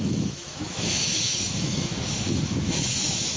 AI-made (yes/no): yes